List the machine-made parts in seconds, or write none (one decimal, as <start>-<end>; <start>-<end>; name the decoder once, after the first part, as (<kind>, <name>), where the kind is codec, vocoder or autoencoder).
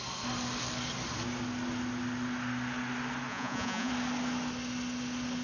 3.3-3.9 (vocoder, Vocos)